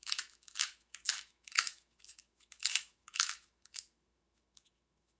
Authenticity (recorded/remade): remade